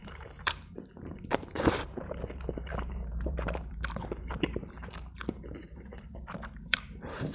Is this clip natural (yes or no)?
no